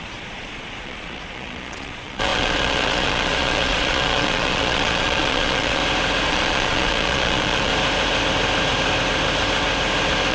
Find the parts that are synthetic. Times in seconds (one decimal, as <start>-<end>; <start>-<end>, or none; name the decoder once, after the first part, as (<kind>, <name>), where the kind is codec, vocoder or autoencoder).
0.0-5.8 (vocoder, Vocos); 6.3-7.7